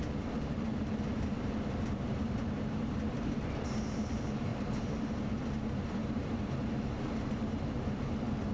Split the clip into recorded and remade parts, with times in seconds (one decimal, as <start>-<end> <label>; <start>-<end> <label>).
0.0-8.5 remade